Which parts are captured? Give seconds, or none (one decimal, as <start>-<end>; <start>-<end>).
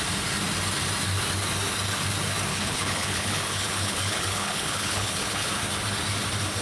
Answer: 0.0-2.5; 5.5-6.6